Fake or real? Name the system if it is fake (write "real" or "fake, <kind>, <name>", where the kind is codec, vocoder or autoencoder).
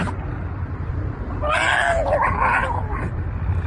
real